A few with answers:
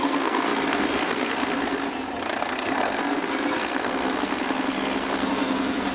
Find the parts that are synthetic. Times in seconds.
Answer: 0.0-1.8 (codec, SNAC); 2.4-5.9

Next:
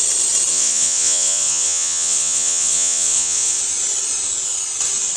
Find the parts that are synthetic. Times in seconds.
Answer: 0.5-3.6 (vocoder, WaveNeXt)

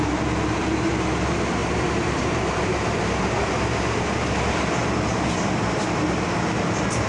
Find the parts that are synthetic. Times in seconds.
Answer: 1.6-3.6 (vocoder, BigVGAN v2)

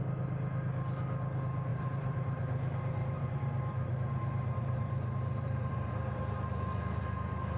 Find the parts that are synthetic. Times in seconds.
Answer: 1.7-6.2 (vocoder, BigVGAN v2)

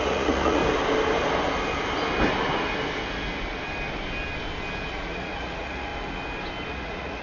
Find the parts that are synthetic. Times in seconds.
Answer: 0.0-0.6 (vocoder, Vocos); 4.9-5.9; 6.7-7.2

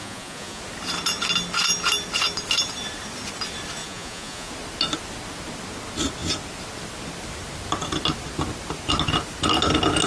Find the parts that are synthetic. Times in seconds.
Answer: 0.0-0.6 (vocoder, Vocos); 3.8-4.5

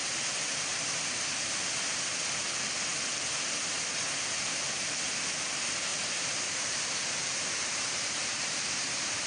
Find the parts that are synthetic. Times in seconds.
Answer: 5.9-9.3 (vocoder, BigVGAN v2)

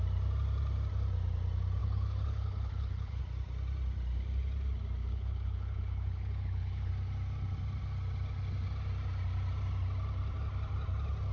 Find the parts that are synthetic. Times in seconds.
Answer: 1.8-3.2 (codec, HILCodec); 5.0-6.9